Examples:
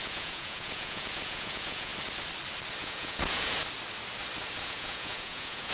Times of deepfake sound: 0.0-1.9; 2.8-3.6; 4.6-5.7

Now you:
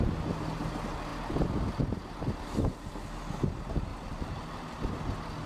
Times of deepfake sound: 3.9-4.9

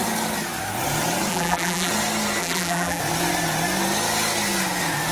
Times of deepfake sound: 1.3-1.9; 2.4-3.0

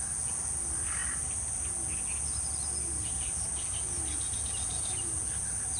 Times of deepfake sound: none

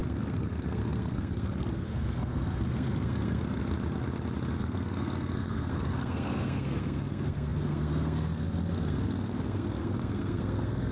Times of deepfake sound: 0.0-3.6; 4.6-10.9